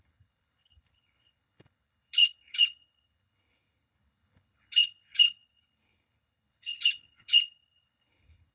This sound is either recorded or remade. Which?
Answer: remade